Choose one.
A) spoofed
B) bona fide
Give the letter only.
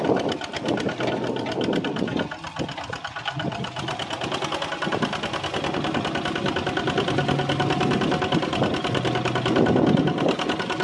B